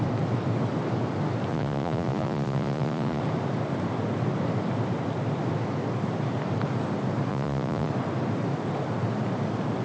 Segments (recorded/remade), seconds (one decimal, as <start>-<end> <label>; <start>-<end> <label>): 0.0-1.5 recorded; 1.5-3.2 remade; 3.2-7.3 recorded; 7.3-7.9 remade; 7.9-9.8 recorded